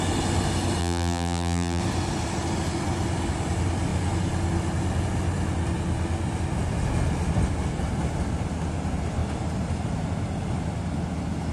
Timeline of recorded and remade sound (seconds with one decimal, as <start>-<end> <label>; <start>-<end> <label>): 0.0-0.8 recorded; 0.8-1.8 remade; 1.8-11.5 recorded